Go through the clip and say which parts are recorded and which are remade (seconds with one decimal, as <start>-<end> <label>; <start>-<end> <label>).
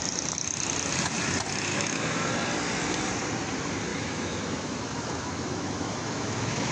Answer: 0.0-1.7 recorded; 1.7-2.3 remade; 2.3-3.9 recorded; 3.9-6.7 remade